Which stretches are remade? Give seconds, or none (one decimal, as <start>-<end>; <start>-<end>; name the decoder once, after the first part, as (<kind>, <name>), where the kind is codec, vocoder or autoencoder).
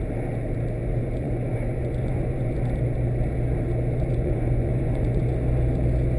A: 1.0-2.5 (vocoder, Vocos); 4.1-5.3